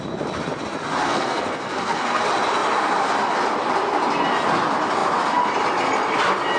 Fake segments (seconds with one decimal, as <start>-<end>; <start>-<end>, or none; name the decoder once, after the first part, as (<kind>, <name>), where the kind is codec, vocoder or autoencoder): 1.0-2.2 (codec, SNAC)